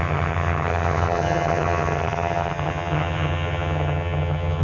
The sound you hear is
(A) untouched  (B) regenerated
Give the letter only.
B